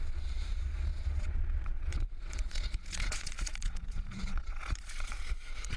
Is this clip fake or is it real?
fake